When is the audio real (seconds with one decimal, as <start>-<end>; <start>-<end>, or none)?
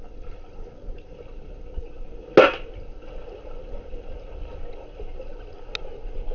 0.0-6.3